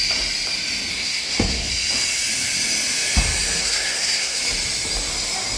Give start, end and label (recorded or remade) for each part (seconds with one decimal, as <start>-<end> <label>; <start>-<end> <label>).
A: 0.0-0.9 recorded; 0.9-1.7 remade; 1.7-3.6 recorded; 3.6-4.4 remade; 4.4-5.6 recorded